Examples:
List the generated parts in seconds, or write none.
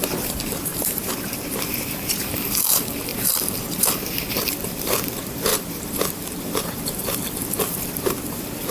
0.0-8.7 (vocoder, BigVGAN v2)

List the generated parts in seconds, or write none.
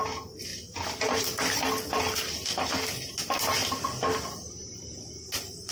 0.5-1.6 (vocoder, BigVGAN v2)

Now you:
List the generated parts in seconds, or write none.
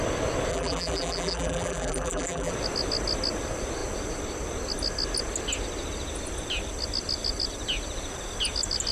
0.5-2.5 (vocoder, BigVGAN v2)